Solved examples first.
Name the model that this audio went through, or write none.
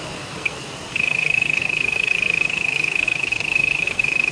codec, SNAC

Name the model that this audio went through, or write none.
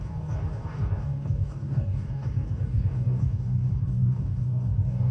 codec, DAC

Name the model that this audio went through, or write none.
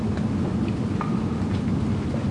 none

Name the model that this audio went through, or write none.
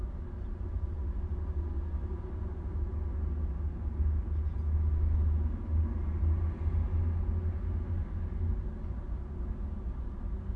none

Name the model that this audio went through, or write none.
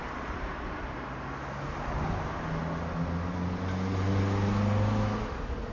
none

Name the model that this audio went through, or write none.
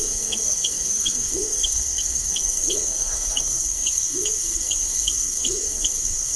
codec, SNAC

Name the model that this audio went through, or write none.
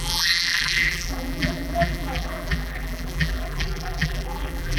vocoder, BigVGAN v2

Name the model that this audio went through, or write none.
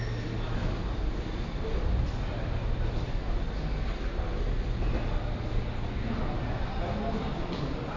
none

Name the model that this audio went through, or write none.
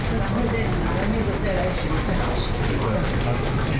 none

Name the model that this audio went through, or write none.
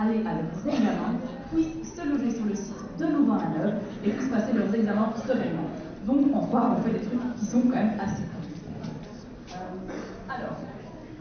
none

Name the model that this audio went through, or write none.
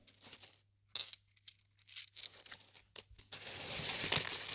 none